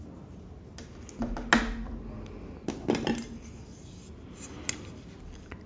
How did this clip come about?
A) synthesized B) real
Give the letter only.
B